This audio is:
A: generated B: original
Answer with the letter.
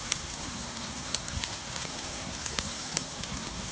A